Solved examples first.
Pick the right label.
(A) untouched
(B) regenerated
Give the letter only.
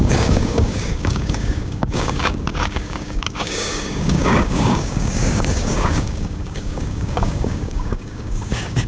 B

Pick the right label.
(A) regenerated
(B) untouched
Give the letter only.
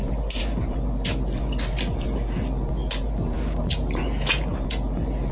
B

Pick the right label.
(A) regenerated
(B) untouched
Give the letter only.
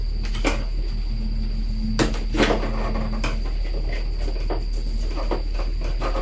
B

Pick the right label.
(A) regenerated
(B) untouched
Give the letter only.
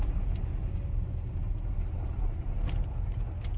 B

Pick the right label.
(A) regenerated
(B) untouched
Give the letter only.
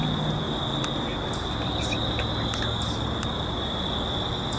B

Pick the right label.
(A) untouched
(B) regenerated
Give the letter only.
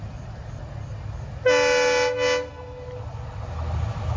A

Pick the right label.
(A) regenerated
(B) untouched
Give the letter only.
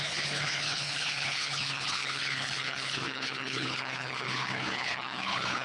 A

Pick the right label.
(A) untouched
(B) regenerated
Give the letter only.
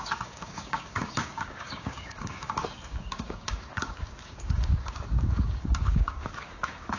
B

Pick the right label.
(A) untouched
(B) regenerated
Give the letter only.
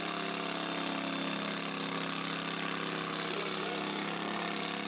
A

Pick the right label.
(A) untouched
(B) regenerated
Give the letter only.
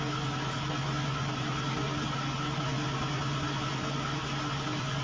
A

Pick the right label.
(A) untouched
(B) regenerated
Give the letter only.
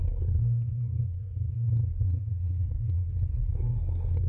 B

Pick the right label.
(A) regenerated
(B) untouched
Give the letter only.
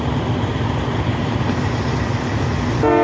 B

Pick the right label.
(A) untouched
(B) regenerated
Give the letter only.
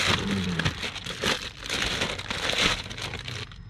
A